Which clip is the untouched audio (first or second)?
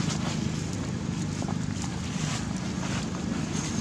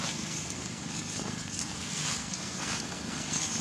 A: first